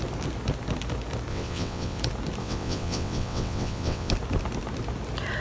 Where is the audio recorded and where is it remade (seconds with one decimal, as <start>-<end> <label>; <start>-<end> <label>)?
0.0-1.3 recorded; 1.3-2.0 remade; 2.0-2.4 recorded; 2.4-4.1 remade; 4.1-5.4 recorded